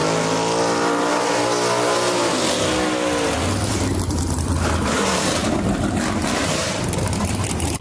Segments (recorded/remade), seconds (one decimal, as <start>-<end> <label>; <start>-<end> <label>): 0.0-3.7 recorded; 3.7-5.4 remade; 5.4-6.5 recorded; 6.5-7.8 remade